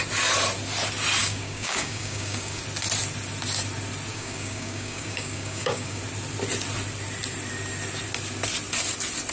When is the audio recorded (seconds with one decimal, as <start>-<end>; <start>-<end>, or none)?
0.0-1.2; 2.6-4.1; 6.0-9.3